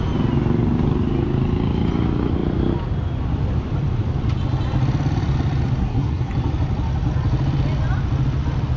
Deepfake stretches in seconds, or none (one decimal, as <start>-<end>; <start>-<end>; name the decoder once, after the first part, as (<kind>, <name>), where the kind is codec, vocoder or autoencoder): 5.8-6.3 (codec, SNAC)